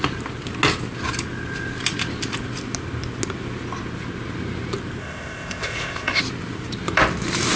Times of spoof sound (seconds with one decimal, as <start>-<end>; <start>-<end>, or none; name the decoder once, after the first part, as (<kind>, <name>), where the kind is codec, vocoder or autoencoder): 5.0-6.2 (codec, ZipCodec)